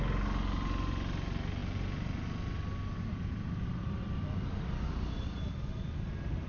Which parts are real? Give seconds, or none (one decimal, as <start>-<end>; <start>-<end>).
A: 0.0-6.5

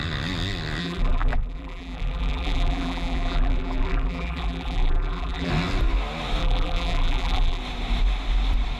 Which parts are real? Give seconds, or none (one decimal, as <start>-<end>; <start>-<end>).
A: 0.0-0.8; 5.5-6.4; 7.6-8.8

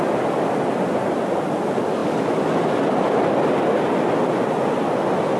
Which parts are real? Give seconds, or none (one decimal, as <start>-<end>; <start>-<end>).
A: 0.0-5.4

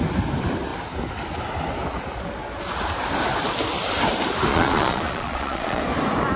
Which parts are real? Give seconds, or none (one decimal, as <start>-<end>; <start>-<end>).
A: 0.0-4.5; 5.8-6.4

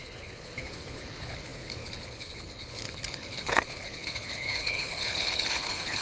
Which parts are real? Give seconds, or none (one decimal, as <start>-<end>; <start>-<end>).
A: none

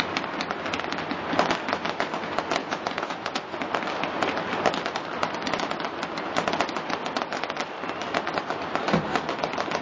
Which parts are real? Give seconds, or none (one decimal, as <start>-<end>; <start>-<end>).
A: 0.0-2.6; 3.4-9.8